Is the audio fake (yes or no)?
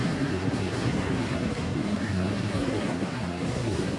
yes